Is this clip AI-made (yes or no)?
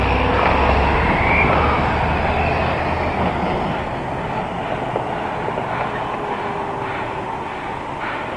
no